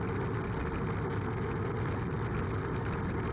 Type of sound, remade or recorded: recorded